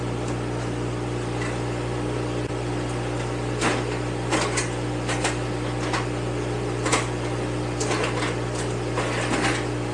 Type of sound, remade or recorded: recorded